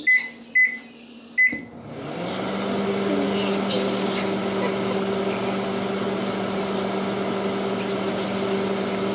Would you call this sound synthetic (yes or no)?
no